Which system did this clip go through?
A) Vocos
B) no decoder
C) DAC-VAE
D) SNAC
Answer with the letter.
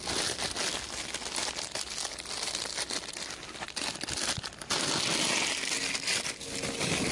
B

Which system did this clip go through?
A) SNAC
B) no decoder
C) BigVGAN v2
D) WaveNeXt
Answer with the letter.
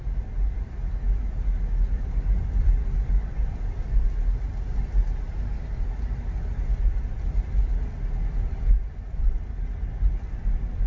B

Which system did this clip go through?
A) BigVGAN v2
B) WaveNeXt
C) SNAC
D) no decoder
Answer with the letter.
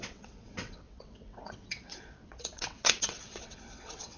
B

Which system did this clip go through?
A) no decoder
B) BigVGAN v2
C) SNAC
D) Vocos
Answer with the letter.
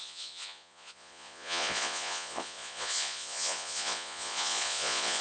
D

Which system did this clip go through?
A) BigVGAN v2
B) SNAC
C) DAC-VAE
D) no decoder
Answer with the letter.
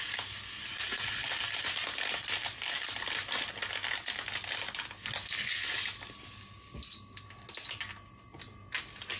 D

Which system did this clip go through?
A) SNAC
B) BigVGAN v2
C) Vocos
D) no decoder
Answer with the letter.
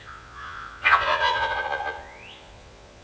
C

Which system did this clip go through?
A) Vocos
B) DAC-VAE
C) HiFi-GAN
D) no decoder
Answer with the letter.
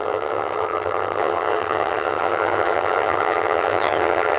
C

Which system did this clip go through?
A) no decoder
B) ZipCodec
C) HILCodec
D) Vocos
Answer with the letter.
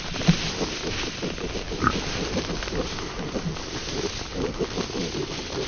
A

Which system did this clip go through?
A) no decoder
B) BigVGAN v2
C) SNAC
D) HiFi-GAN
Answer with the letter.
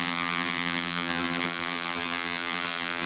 B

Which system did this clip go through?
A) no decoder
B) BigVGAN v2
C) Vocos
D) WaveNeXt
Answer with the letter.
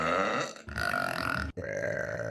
A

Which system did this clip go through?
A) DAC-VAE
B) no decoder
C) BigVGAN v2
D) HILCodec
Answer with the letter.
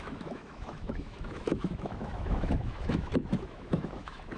A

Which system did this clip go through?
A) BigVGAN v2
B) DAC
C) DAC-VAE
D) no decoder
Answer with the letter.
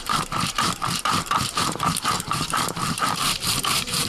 A